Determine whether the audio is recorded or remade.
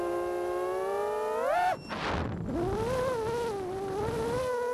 recorded